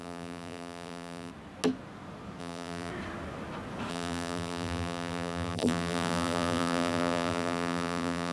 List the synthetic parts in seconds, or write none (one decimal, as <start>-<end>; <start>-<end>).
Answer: 0.0-1.3; 2.4-2.9; 3.9-8.3